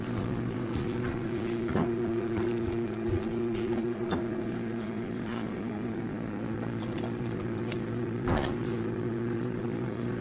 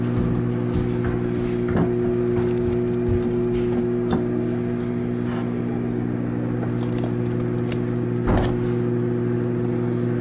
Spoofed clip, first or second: first